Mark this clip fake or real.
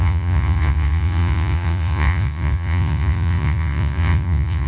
fake